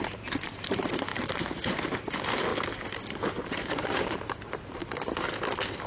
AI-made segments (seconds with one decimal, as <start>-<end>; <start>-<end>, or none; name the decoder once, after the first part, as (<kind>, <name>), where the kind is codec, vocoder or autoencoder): 0.0-2.5 (vocoder, BigVGAN v2); 3.7-4.8